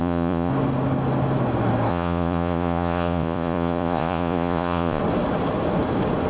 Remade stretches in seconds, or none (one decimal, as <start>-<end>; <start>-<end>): 0.0-0.5; 1.9-5.0